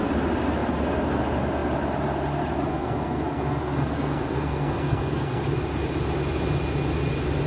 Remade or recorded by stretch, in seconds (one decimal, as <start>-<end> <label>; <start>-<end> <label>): 0.0-2.7 recorded; 2.7-5.5 remade; 5.5-7.5 recorded